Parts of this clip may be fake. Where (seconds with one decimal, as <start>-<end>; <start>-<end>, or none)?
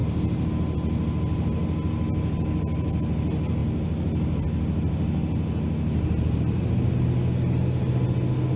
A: 0.0-0.5